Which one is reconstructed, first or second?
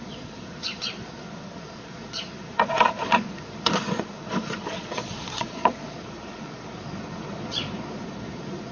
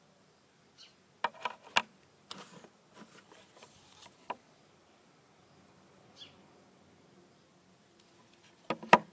first